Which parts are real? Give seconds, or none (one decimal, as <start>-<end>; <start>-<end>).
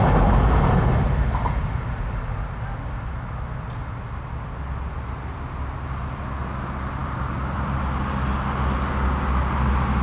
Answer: 0.0-7.0; 7.8-10.0